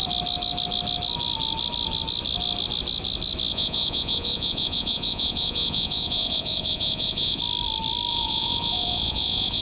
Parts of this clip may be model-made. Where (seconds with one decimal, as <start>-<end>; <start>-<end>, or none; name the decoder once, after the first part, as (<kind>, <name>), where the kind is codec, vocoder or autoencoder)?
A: 3.5-7.4 (vocoder, Vocos); 8.1-9.6